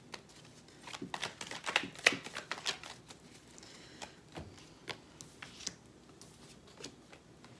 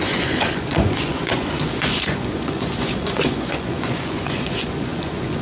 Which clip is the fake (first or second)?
second